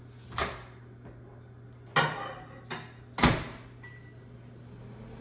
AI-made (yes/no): no